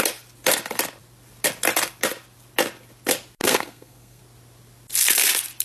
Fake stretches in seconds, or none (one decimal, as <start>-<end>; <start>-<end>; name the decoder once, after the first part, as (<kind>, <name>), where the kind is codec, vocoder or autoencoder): 3.4-4.2 (codec, SNAC)